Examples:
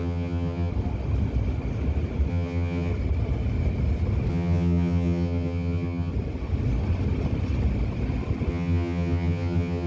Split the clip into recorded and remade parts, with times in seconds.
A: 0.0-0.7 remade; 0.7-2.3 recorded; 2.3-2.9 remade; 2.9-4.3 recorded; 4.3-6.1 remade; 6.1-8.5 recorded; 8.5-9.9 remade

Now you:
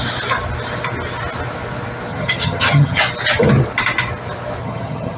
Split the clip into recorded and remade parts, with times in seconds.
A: 0.0-2.1 recorded; 2.1-3.0 remade; 3.0-4.6 recorded; 4.6-5.2 remade

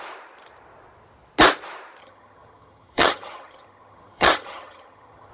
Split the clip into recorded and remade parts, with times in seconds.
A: 0.0-2.0 recorded; 2.0-5.3 remade

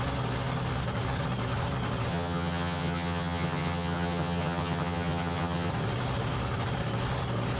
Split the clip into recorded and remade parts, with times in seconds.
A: 0.0-2.1 recorded; 2.1-5.7 remade; 5.7-7.6 recorded

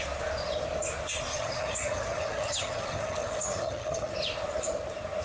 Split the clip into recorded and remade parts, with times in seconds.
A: 0.0-1.3 recorded; 1.3-4.1 remade; 4.1-5.2 recorded